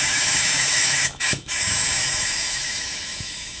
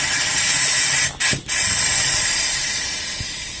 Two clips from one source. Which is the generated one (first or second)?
first